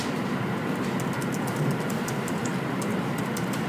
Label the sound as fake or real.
real